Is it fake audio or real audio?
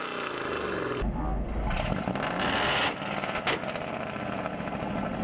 real